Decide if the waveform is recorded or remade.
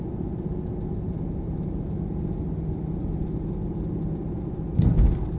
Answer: recorded